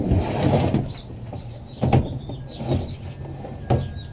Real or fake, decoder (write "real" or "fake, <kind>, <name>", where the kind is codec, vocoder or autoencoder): real